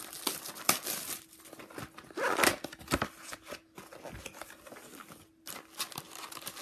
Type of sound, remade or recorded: recorded